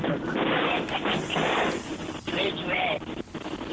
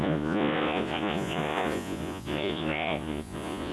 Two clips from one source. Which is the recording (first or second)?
first